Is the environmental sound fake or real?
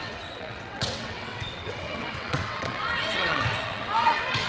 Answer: fake